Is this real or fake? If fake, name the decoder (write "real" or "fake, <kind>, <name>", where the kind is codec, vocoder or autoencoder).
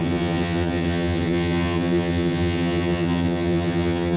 fake, vocoder, HiFi-GAN